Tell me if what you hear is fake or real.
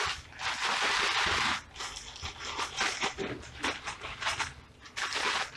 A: real